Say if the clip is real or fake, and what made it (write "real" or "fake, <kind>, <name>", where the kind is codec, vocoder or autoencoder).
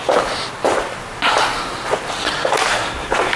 real